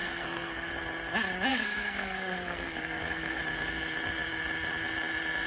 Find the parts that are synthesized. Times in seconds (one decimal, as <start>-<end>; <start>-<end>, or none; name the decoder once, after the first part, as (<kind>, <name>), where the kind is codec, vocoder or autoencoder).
0.0-0.7 (codec, SNAC); 1.5-3.4

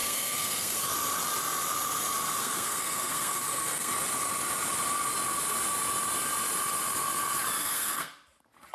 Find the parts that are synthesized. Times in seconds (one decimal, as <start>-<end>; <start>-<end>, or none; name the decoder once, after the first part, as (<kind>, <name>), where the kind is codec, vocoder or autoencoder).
0.0-0.8 (codec, SNAC); 2.4-3.9; 7.6-8.1

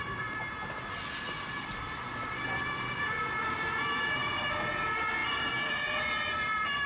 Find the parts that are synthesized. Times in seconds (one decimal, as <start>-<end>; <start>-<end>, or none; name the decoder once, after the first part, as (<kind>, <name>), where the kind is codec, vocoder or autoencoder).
none

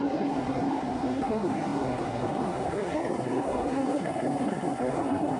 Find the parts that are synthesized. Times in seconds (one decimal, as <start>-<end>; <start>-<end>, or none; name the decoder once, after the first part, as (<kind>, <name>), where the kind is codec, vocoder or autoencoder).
0.0-5.4 (codec, SNAC)

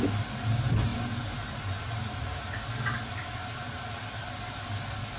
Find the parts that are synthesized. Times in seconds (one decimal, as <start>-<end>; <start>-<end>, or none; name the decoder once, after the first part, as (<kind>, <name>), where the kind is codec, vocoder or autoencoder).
none